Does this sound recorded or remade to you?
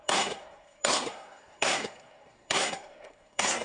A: remade